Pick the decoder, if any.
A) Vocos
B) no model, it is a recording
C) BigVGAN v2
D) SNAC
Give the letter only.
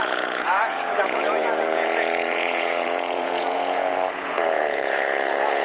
A